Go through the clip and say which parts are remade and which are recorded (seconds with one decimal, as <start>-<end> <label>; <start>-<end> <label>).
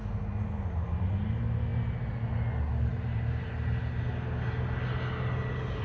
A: 0.0-2.9 recorded; 2.9-3.5 remade; 3.5-5.8 recorded